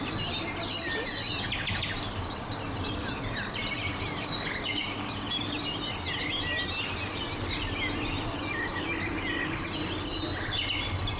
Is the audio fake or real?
real